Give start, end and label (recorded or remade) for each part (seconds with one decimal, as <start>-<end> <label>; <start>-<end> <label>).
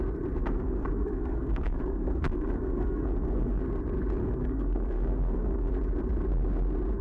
0.0-0.4 recorded; 0.4-3.6 remade; 3.6-4.2 recorded; 4.2-5.7 remade; 5.7-7.0 recorded